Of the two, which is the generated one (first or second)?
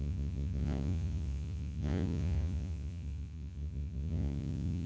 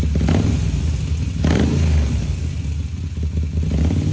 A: first